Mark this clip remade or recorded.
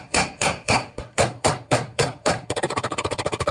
remade